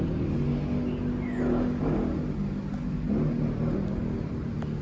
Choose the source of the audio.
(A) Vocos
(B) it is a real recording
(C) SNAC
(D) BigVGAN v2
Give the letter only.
B